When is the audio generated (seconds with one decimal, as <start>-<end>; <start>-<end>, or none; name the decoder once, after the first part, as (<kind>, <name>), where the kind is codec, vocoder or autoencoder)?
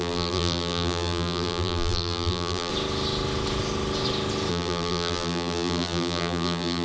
0.0-2.7 (vocoder, BigVGAN v2); 4.5-6.8